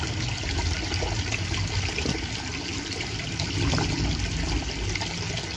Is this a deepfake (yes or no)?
no